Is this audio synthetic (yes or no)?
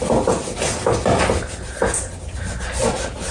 no